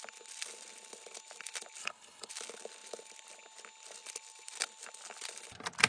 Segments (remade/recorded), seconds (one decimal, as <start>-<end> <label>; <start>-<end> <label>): 0.0-1.8 recorded; 1.8-2.3 remade; 2.3-5.9 recorded